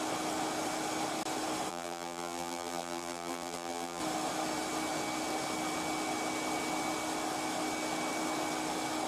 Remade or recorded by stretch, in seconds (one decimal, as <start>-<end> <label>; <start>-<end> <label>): 0.0-1.7 recorded; 1.7-4.0 remade; 4.0-9.1 recorded